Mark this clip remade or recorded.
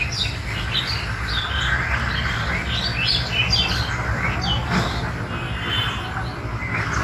recorded